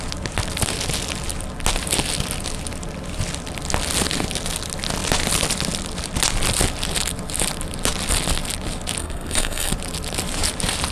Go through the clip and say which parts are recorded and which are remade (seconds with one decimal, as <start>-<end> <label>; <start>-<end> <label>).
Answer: 0.0-9.0 recorded; 9.0-9.7 remade; 9.7-10.9 recorded